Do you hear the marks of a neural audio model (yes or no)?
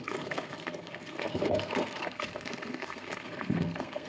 yes